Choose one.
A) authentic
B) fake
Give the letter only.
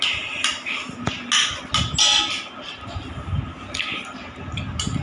A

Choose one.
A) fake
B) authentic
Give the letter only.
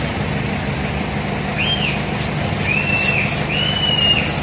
B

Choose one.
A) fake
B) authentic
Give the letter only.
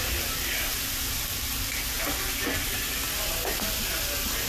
B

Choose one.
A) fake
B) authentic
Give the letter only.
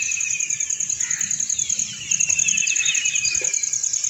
B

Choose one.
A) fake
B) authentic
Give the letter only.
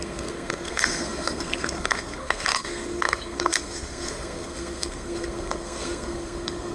A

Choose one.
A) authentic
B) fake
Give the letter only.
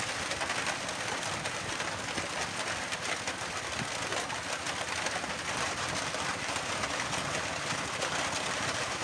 A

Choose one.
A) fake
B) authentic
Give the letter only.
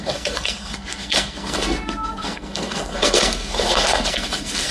A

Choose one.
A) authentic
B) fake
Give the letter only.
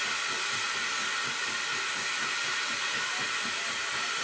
A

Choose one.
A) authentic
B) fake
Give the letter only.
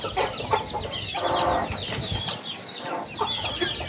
A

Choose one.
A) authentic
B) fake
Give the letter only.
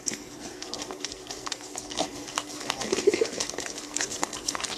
B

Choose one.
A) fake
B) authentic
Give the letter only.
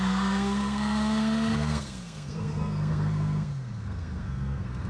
A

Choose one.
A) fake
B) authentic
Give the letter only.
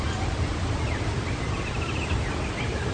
B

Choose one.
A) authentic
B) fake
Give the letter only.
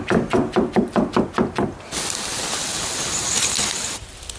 A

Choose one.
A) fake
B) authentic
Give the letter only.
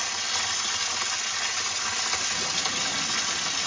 B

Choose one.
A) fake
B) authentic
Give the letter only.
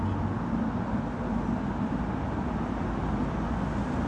B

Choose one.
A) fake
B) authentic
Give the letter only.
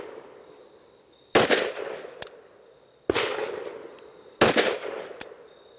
B